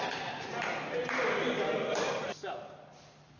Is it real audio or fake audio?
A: real